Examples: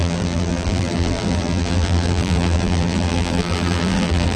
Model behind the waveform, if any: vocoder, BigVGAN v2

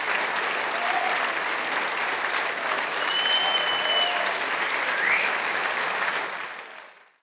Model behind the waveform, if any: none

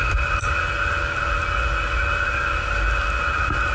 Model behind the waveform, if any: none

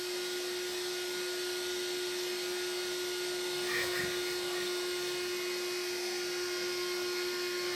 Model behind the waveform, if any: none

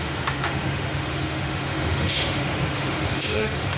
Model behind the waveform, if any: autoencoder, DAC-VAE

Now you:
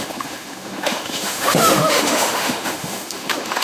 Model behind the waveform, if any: autoencoder, DAC-VAE